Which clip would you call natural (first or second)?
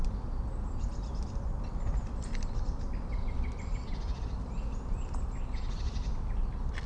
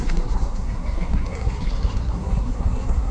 first